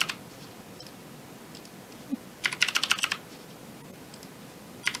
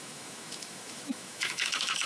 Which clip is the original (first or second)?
first